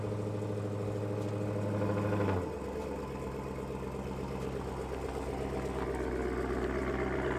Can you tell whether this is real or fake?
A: real